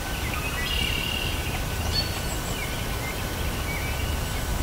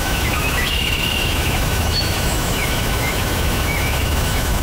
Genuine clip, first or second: first